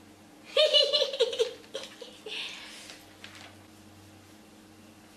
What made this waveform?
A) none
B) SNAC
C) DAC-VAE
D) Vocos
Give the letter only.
A